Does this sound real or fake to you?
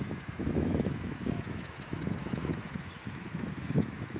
fake